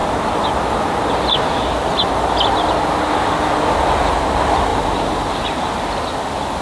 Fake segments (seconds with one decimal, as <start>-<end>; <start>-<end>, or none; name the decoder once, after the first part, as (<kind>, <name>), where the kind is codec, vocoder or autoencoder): 4.7-5.9 (vocoder, BigVGAN v2)